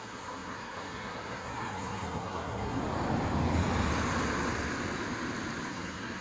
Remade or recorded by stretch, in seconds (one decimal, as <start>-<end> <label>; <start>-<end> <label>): 0.0-2.8 remade; 2.8-5.7 recorded; 5.7-6.2 remade